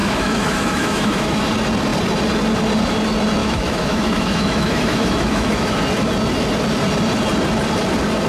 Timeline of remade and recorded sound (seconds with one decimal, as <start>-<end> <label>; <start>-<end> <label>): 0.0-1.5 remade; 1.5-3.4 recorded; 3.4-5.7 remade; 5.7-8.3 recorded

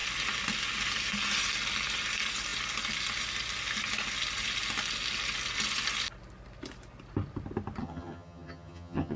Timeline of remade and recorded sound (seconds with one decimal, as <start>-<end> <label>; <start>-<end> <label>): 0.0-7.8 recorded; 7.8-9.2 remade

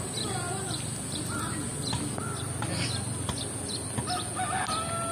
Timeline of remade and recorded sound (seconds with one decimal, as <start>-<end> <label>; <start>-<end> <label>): 0.0-5.1 recorded